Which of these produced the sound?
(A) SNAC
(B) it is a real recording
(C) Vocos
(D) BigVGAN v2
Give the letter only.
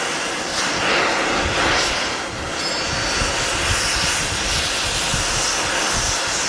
B